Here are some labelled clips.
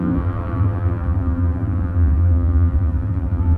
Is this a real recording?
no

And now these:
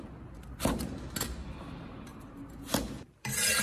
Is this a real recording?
yes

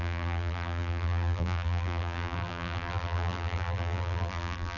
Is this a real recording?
no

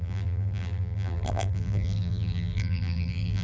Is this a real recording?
no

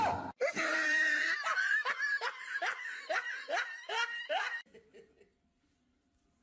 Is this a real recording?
no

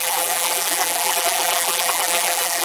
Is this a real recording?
no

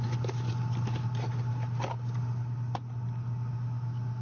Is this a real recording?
yes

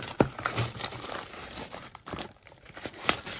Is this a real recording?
no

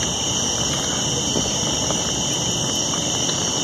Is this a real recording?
yes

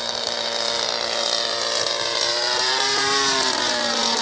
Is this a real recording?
no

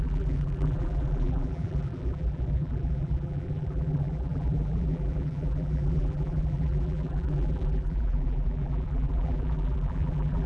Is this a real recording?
no